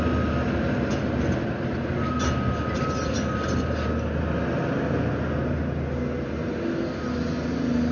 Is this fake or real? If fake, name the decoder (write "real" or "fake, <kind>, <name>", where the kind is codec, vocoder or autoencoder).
real